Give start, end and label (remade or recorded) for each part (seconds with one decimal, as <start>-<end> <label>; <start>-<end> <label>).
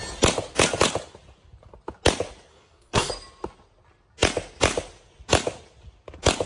0.0-2.5 recorded; 2.5-3.1 remade; 3.1-6.5 recorded